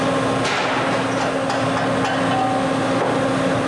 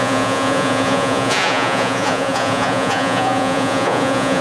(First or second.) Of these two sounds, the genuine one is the first